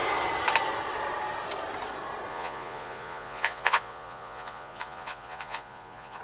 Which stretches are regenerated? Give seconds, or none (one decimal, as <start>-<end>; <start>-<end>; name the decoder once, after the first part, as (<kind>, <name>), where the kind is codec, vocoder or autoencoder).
2.3-6.2 (vocoder, Vocos)